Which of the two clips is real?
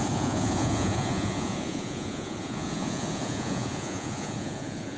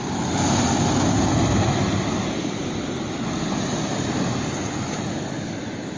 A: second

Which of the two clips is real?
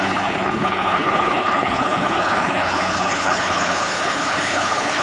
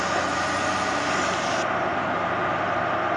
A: second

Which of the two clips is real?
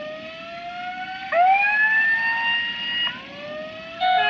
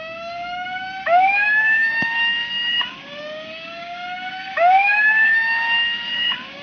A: first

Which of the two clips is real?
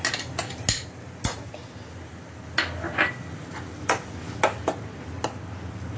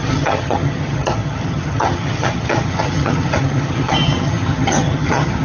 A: first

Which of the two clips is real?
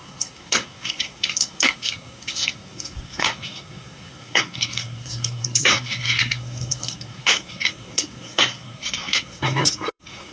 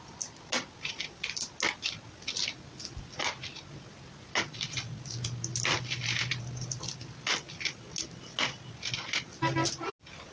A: second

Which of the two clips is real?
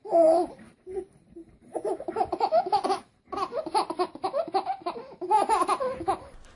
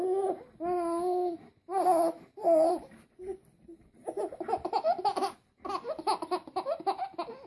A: second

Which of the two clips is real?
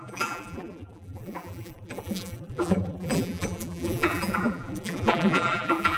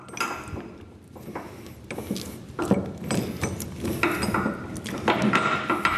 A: second